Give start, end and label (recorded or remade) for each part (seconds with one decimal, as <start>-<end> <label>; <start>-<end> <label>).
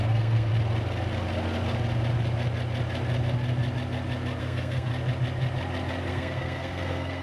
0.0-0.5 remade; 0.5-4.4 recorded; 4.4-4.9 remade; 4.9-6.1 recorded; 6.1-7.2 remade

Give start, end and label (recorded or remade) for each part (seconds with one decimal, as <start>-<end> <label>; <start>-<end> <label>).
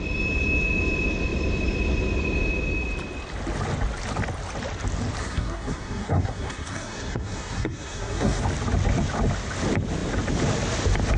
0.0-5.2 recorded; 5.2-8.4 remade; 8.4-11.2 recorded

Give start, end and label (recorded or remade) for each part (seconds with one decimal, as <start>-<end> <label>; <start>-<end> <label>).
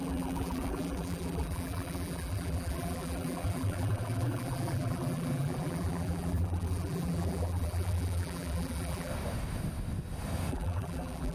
0.0-9.1 remade; 9.1-10.5 recorded; 10.5-11.3 remade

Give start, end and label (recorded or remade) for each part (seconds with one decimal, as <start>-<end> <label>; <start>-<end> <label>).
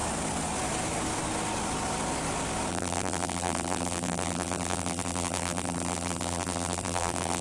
0.0-2.7 recorded; 2.7-7.4 remade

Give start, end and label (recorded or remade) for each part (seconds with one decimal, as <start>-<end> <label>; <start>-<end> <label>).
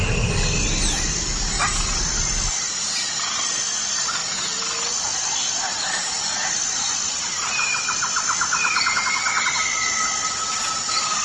0.0-11.2 recorded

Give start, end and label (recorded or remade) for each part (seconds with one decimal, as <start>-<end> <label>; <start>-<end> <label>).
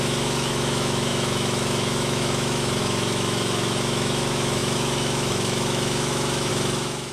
0.0-7.1 remade